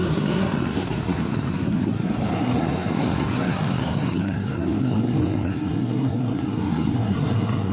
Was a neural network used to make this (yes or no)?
yes